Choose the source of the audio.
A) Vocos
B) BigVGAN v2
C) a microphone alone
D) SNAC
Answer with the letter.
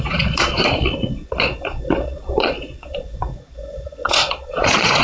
A